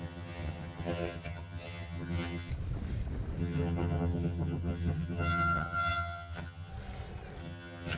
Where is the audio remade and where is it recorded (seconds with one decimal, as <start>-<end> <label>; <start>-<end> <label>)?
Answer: 0.0-2.5 remade; 2.5-3.4 recorded; 3.4-6.7 remade; 6.7-7.4 recorded; 7.4-8.0 remade